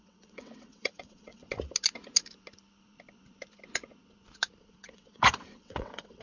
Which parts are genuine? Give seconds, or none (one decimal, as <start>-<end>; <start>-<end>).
1.4-4.6